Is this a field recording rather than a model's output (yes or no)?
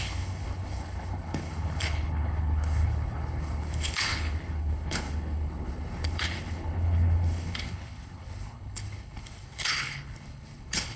no